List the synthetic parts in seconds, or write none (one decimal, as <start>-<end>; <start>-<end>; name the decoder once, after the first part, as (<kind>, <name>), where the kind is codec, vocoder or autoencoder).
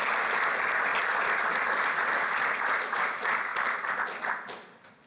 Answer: none